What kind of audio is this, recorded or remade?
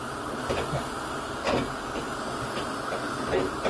recorded